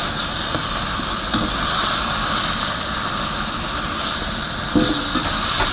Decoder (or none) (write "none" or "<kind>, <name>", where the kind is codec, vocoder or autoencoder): none